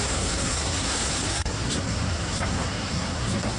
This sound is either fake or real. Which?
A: fake